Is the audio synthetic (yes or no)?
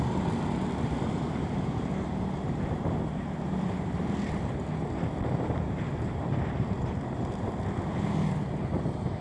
yes